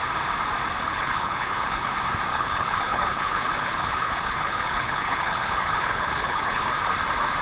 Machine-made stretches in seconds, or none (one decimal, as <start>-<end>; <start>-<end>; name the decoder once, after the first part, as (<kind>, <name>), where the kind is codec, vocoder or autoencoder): 0.8-1.9 (codec, HILCodec); 2.3-6.7